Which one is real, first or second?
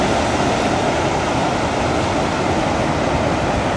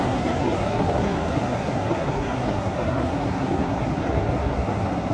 first